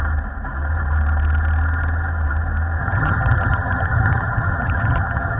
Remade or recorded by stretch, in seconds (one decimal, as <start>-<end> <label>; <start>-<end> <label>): 0.0-2.8 recorded; 2.8-5.4 remade